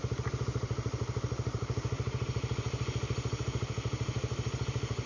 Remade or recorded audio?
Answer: recorded